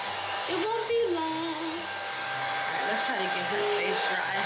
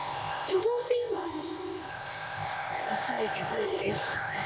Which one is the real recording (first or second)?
first